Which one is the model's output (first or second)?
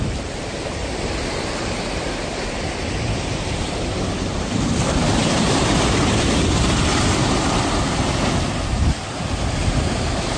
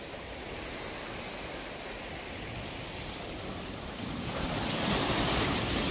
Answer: first